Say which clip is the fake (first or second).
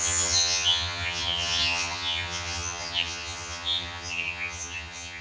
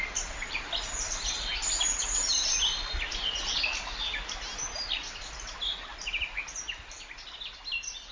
first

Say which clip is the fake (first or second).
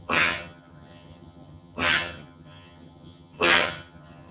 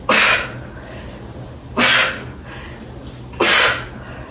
first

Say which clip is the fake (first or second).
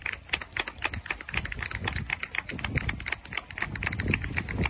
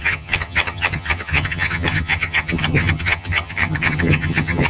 second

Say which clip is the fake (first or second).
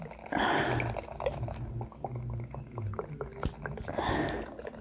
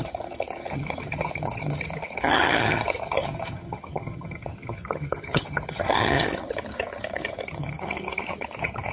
second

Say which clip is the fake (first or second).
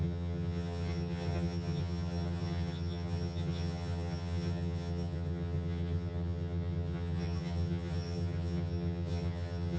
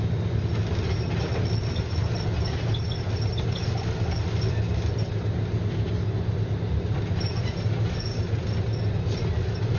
first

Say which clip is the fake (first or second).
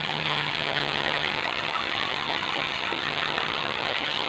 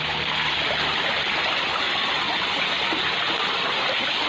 first